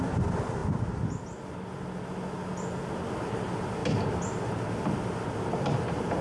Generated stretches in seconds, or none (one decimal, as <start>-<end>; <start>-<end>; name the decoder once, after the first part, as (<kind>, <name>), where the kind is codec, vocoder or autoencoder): none